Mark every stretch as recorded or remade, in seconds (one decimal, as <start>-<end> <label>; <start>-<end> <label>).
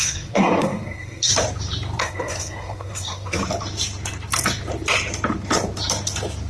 0.0-1.3 remade; 1.3-2.0 recorded; 2.0-3.4 remade; 3.4-6.5 recorded